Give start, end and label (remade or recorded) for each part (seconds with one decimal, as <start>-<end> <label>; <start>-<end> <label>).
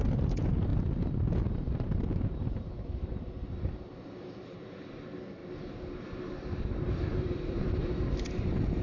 0.0-5.4 remade; 5.4-7.2 recorded; 7.2-7.8 remade; 7.8-8.8 recorded